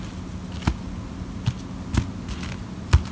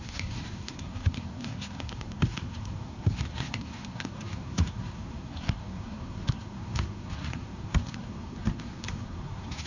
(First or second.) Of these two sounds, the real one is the first